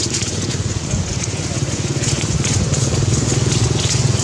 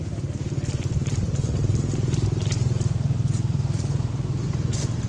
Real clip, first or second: second